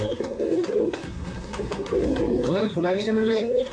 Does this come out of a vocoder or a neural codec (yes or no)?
yes